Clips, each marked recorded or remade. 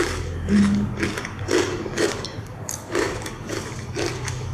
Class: remade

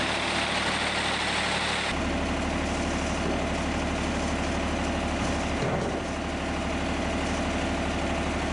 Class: recorded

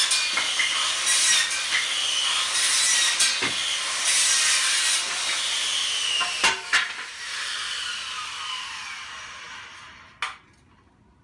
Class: recorded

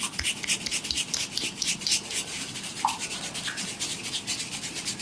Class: recorded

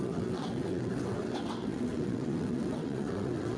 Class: remade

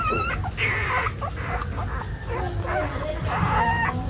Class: recorded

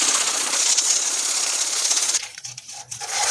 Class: remade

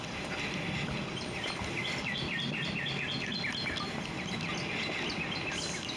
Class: recorded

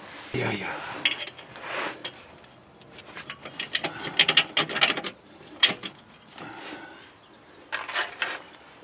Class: recorded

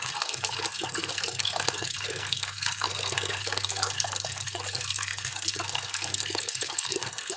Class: remade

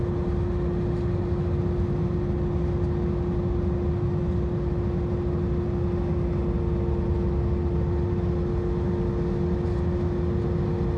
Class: recorded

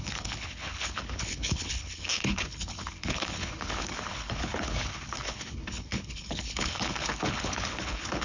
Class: remade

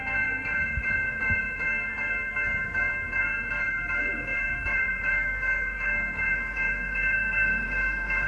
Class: remade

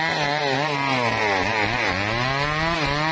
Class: recorded